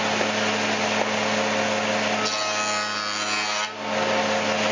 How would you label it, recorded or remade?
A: recorded